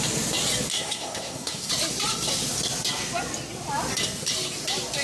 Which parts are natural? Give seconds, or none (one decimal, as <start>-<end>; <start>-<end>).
0.0-0.7; 1.7-5.0